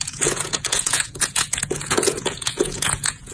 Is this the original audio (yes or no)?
no